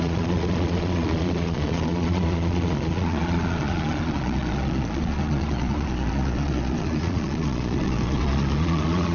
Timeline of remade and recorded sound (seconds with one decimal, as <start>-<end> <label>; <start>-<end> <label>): 0.0-9.1 remade